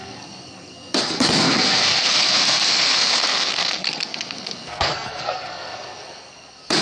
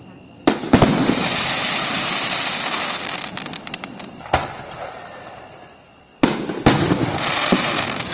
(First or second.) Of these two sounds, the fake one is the first